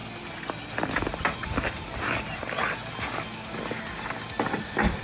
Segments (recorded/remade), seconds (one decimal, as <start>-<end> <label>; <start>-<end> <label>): 0.0-5.0 recorded